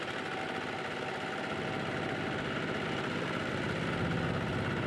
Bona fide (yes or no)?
yes